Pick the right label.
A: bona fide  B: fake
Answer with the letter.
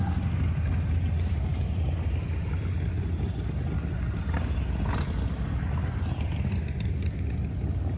A